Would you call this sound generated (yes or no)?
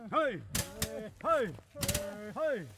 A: no